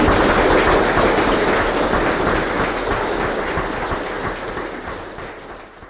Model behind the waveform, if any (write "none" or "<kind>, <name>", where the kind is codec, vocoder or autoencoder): none